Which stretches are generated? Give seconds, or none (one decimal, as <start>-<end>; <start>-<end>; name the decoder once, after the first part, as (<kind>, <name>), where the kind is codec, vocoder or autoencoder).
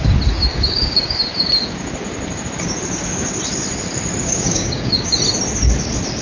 0.5-1.2 (codec, DAC); 4.2-5.2